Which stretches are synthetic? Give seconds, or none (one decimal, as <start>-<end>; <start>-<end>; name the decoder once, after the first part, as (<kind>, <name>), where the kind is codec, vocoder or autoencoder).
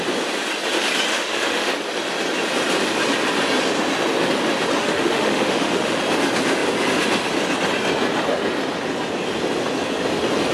1.1-1.7 (autoencoder, DAC-VAE); 4.8-6.0